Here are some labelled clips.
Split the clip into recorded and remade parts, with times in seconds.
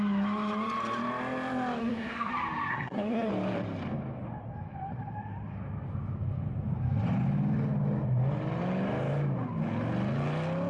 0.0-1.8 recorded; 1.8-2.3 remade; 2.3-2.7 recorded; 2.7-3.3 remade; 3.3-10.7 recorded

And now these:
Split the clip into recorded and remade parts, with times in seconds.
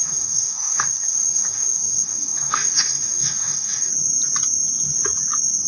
0.0-3.9 remade; 3.9-5.7 recorded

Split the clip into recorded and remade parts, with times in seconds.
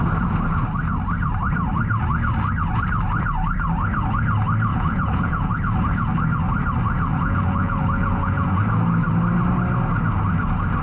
0.0-4.7 recorded; 4.7-5.5 remade; 5.5-7.1 recorded; 7.1-8.6 remade; 8.6-10.8 recorded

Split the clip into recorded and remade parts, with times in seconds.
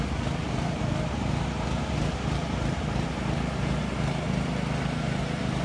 0.0-0.4 recorded; 0.4-3.8 remade; 3.8-5.6 recorded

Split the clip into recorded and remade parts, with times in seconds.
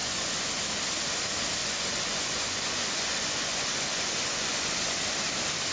0.0-0.6 remade; 0.6-1.6 recorded; 1.6-5.0 remade; 5.0-5.7 recorded